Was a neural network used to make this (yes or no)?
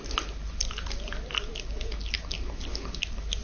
no